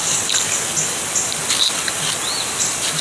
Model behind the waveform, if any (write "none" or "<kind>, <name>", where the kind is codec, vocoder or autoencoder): none